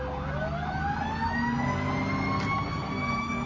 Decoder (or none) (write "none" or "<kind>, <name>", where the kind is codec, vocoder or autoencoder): none